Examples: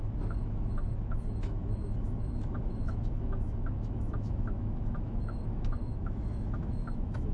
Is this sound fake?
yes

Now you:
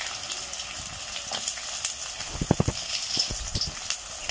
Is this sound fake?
no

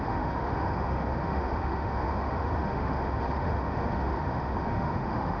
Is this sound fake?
yes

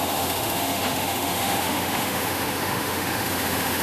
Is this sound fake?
yes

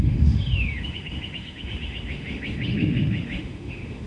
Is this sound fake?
yes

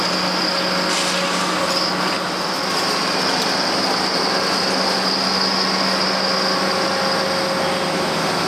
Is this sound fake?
no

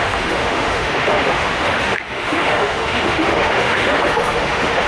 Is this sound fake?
yes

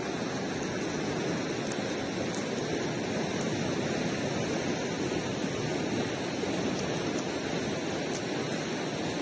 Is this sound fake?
no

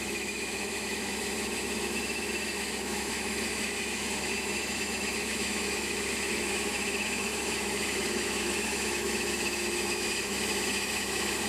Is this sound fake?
yes